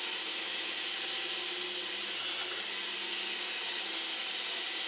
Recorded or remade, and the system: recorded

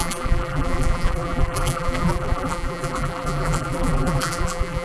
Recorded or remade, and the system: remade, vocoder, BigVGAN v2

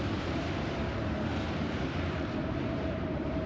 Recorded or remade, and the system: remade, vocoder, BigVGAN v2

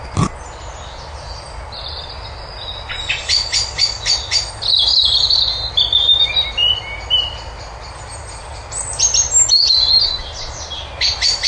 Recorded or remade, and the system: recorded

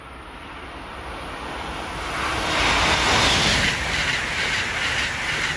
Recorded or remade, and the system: recorded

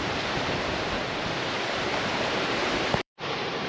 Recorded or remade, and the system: remade, vocoder, BigVGAN v2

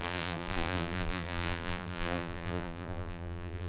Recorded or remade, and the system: remade, vocoder, BigVGAN v2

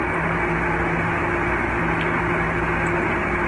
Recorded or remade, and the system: recorded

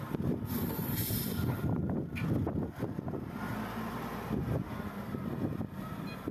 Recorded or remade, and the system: recorded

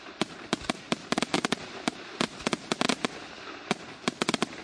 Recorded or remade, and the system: remade, vocoder, BigVGAN v2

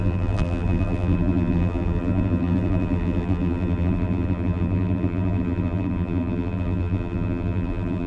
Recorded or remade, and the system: remade, vocoder, BigVGAN v2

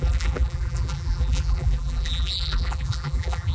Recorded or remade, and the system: remade, vocoder, BigVGAN v2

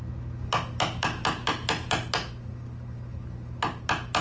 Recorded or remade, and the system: recorded